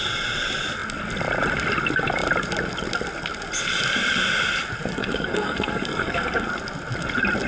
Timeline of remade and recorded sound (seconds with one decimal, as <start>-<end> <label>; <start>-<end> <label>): 0.0-4.9 recorded; 4.9-6.5 remade; 6.5-7.5 recorded